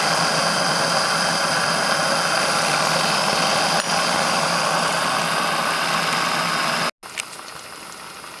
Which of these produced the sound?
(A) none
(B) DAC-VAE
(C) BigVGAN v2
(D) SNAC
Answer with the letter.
A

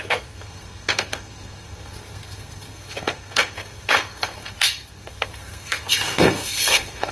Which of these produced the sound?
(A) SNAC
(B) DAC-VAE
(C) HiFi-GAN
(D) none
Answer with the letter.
A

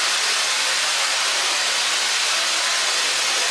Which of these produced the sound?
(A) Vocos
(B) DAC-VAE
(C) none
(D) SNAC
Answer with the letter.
C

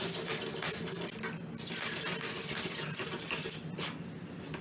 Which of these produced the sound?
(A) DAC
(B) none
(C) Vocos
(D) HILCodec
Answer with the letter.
B